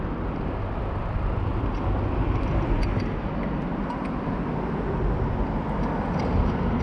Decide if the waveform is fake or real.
real